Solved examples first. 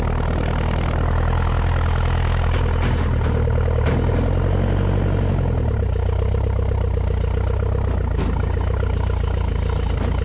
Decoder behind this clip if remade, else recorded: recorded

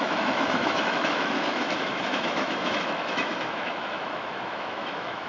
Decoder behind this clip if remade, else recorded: remade, autoencoder, DAC-VAE